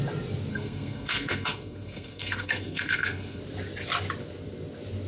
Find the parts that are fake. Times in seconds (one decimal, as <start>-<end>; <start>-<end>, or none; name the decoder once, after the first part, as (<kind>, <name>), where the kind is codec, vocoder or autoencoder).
0.5-3.4 (codec, SNAC)